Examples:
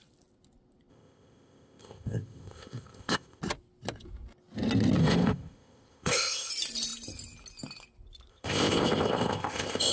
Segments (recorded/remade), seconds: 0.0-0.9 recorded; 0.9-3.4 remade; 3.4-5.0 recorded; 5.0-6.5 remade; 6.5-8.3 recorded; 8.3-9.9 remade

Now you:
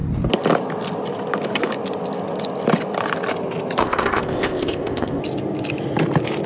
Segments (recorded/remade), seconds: 0.0-3.8 recorded; 3.8-5.2 remade; 5.2-6.5 recorded

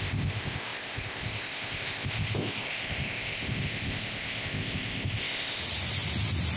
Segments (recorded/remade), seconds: 0.0-5.6 remade; 5.6-6.6 recorded